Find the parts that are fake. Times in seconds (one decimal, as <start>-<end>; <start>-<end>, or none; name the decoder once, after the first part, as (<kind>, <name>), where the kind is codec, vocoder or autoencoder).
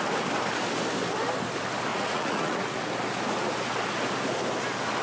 1.9-2.8 (vocoder, Vocos)